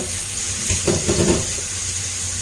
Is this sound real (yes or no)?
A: yes